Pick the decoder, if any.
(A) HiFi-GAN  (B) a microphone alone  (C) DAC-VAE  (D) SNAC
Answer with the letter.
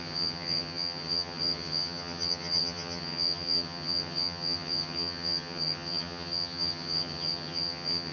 A